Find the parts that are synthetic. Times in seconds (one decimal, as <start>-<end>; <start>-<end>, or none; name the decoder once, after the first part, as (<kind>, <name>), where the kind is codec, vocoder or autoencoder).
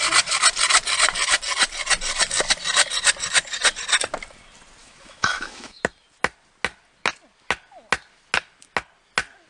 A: 4.8-5.8 (autoencoder, DAC-VAE)